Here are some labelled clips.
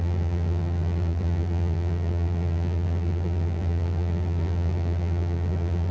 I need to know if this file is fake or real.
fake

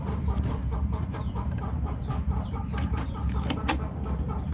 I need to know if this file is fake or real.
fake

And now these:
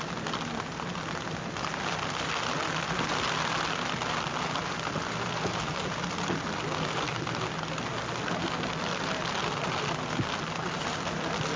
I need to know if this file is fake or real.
real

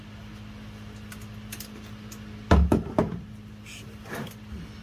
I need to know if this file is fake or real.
real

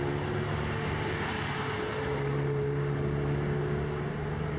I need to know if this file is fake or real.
real